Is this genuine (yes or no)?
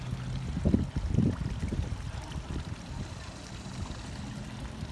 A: yes